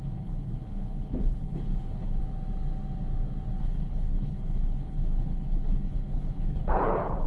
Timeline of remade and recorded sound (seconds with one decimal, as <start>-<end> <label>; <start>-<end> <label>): 0.0-2.2 remade; 2.2-3.6 recorded; 3.6-7.3 remade